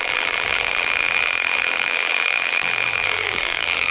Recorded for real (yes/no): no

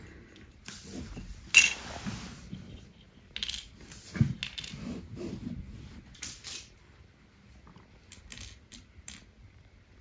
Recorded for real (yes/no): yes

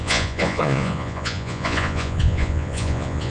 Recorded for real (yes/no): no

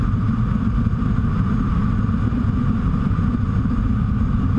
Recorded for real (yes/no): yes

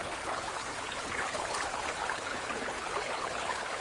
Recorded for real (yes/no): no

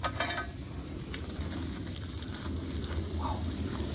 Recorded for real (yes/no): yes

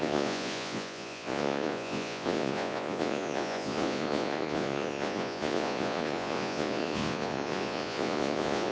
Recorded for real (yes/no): no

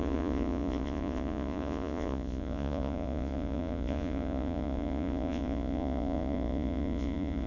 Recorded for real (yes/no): no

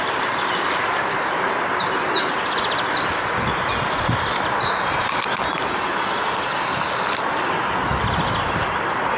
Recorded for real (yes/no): yes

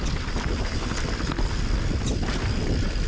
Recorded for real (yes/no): yes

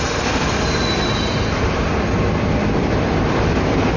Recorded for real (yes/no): no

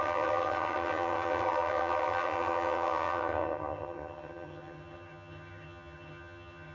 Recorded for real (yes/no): no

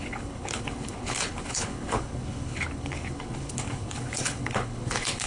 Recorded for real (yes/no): no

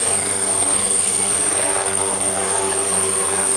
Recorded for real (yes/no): no